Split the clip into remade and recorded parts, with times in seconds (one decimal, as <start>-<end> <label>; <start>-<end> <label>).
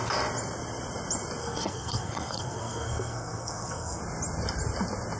0.0-1.4 recorded; 1.4-4.0 remade; 4.0-5.2 recorded